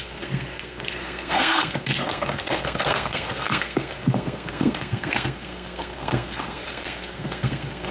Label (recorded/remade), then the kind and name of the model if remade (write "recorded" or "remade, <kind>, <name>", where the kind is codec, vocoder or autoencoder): remade, codec, SNAC